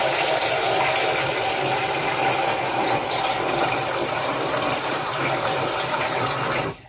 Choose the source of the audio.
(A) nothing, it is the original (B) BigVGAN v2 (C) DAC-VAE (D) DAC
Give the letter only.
A